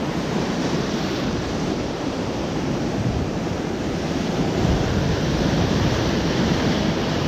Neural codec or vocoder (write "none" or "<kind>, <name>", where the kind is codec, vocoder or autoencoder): vocoder, BigVGAN v2